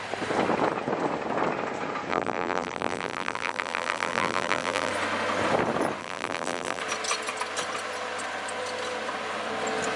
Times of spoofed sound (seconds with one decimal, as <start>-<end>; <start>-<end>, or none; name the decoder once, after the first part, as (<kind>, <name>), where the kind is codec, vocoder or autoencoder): 2.1-4.9 (vocoder, BigVGAN v2); 6.0-6.8